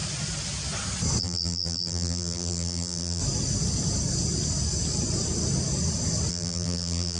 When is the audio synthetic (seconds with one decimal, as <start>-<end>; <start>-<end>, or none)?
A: 1.2-3.2; 6.3-7.2